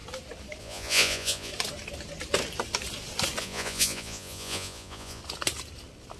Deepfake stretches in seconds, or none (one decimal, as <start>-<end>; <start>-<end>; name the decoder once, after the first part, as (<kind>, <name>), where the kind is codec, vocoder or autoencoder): 0.6-1.5 (vocoder, Vocos); 3.4-5.2